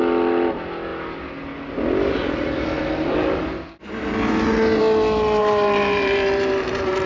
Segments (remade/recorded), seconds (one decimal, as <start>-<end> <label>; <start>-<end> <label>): 0.0-5.4 recorded; 5.4-7.1 remade